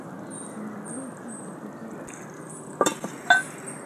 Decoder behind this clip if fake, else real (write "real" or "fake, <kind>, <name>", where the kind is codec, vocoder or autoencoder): real